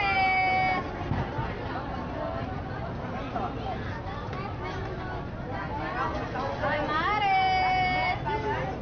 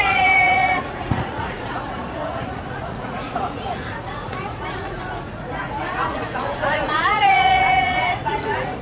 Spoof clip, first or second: second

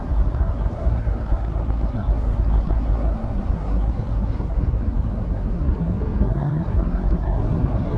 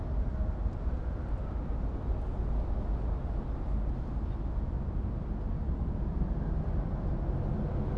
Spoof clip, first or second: first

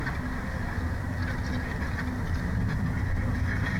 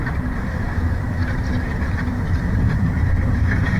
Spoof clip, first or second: second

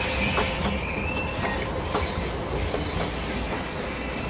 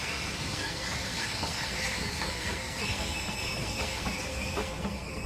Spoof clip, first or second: second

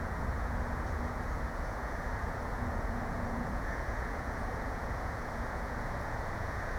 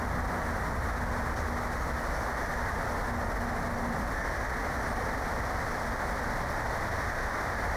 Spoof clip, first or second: first